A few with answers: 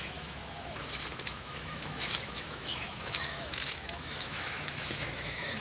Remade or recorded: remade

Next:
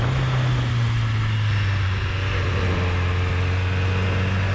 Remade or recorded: recorded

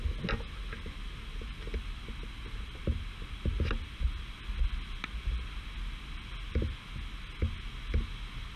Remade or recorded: recorded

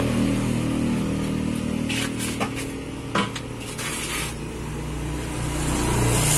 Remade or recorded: recorded